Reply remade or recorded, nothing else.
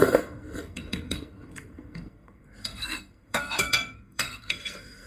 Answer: remade